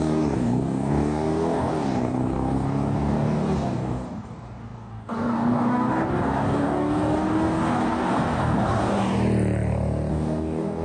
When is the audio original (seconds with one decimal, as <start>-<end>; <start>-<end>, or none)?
9.1-10.1